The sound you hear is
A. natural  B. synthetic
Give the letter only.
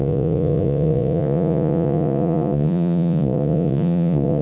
B